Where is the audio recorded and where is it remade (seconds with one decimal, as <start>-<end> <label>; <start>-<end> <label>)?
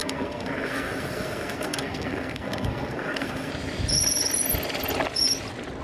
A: 0.0-3.5 remade; 3.5-5.8 recorded